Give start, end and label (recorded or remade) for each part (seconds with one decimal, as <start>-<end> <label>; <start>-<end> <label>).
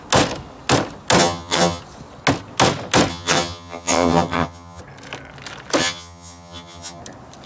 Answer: 0.0-1.2 recorded; 1.2-1.8 remade; 1.8-3.1 recorded; 3.1-4.8 remade; 4.8-5.8 recorded; 5.8-7.0 remade; 7.0-7.5 recorded